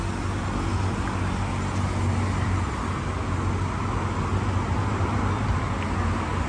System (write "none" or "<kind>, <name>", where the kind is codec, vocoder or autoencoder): none